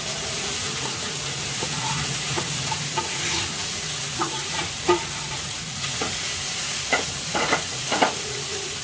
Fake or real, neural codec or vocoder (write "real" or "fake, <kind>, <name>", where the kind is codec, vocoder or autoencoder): fake, vocoder, Vocos